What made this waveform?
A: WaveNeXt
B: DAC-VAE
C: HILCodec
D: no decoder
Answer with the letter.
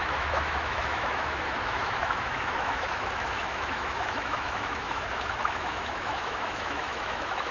B